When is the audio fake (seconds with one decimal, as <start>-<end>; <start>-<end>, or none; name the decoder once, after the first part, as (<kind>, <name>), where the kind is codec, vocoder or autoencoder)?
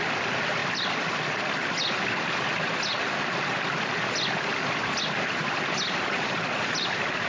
none